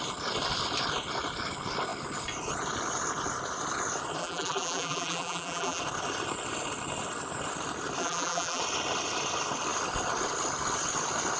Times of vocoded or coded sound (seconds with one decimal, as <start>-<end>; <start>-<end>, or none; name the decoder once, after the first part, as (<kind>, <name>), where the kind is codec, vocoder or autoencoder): 4.2-5.8 (vocoder, BigVGAN v2); 8.0-8.6